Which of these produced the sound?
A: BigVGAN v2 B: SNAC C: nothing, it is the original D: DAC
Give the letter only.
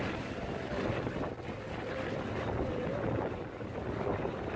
C